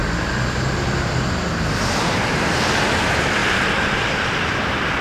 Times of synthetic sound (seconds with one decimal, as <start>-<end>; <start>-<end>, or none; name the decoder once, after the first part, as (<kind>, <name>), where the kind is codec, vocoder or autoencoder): none